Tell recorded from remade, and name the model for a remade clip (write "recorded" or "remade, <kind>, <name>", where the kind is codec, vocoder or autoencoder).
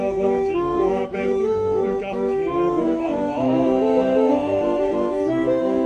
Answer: remade, autoencoder, DAC-VAE